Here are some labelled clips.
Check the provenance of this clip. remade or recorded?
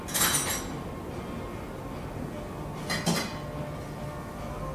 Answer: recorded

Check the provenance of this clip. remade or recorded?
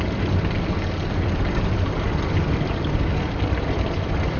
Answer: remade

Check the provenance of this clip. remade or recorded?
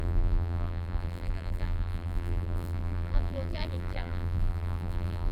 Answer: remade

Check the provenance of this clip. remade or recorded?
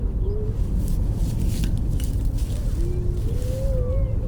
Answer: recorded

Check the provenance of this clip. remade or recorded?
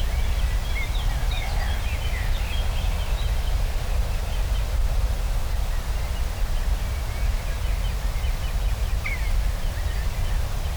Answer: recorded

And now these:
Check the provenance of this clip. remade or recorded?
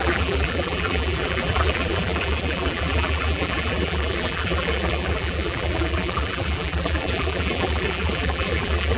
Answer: remade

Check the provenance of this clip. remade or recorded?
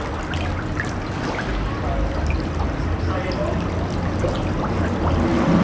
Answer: recorded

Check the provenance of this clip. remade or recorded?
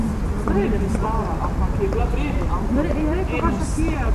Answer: remade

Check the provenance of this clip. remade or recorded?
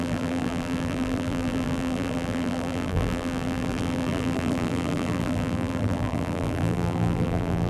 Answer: remade